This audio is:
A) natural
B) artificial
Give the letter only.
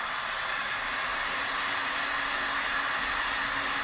A